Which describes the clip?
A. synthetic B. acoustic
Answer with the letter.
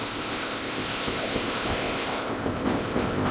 A